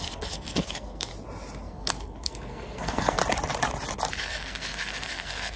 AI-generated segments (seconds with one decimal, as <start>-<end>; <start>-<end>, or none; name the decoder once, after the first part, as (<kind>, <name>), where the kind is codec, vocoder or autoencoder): 0.0-1.1 (codec, SNAC); 1.6-3.2; 4.2-5.6